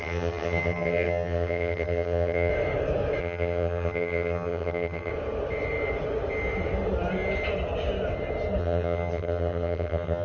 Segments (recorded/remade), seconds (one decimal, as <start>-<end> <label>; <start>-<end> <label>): 0.0-2.5 remade; 2.5-3.2 recorded; 3.2-5.1 remade; 5.1-8.6 recorded; 8.6-10.2 remade